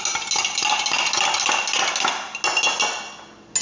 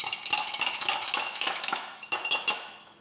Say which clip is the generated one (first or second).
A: second